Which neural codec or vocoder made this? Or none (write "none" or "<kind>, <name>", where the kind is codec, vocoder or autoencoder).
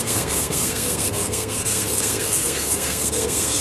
codec, SNAC